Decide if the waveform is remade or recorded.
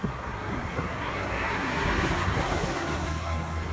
remade